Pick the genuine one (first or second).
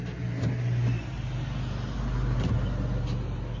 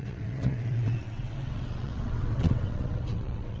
first